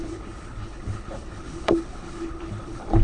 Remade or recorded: remade